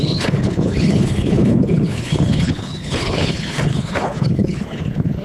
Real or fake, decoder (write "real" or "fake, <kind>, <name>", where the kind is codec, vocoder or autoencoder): fake, codec, HILCodec